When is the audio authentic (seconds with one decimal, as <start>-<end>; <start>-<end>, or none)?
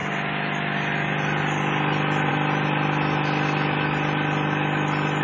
0.0-5.2